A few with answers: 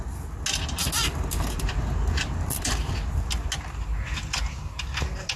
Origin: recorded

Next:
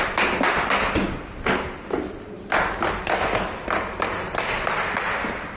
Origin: recorded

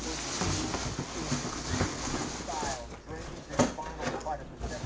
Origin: recorded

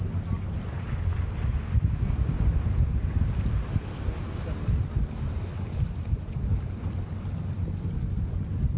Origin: recorded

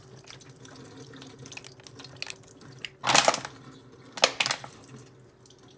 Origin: recorded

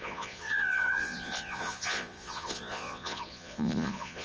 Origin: remade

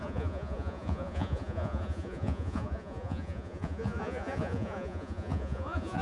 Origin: remade